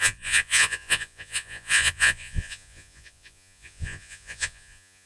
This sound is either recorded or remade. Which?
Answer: remade